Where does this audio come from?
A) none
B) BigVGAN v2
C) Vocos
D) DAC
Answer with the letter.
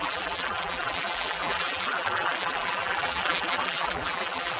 B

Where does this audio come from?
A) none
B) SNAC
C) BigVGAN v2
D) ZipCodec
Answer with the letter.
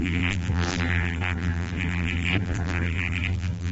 C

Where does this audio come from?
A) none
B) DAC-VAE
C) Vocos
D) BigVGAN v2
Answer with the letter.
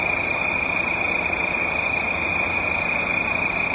A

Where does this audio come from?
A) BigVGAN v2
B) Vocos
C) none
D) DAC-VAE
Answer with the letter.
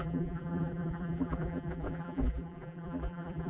A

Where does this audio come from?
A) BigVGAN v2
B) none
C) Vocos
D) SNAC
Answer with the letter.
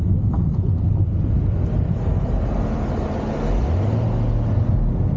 B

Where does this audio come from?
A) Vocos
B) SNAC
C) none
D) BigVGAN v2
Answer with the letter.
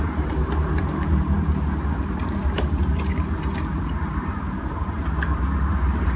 D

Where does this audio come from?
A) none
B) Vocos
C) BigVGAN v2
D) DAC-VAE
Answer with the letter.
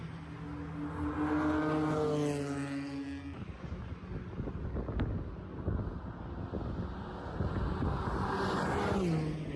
A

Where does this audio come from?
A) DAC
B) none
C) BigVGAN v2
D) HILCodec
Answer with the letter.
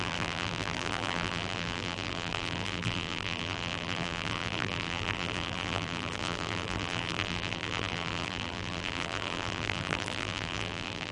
C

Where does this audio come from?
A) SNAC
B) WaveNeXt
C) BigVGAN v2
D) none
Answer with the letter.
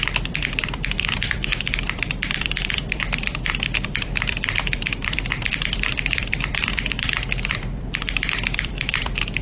C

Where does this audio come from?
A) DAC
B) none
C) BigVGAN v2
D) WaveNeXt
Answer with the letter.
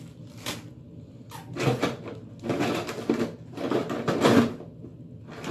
B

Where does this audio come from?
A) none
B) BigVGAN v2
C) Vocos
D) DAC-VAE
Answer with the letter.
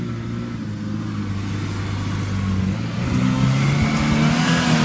A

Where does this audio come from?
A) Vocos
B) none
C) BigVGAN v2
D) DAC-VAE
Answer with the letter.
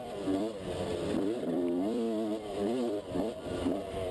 C